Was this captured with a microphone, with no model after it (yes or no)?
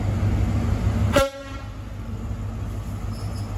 yes